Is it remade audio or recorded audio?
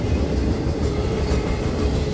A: recorded